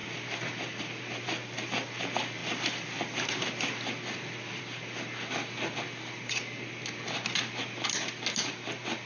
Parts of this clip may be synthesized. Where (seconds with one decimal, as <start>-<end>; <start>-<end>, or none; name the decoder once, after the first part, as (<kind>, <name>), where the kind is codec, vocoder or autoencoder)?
2.4-4.6 (vocoder, BigVGAN v2)